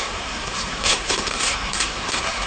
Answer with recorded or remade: remade